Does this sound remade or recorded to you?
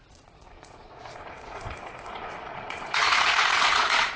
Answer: remade